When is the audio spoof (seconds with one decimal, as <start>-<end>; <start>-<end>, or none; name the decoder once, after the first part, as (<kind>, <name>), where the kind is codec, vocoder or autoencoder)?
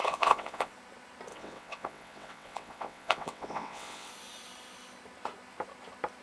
0.0-0.7 (vocoder, WaveNeXt); 1.3-4.1